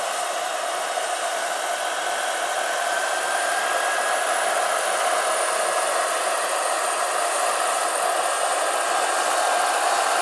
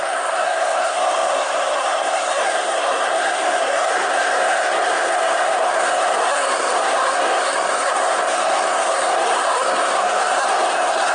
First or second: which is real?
first